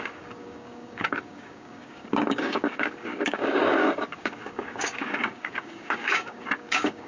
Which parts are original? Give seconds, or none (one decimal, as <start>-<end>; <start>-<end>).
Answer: none